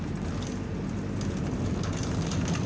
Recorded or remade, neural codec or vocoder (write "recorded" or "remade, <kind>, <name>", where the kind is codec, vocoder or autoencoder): recorded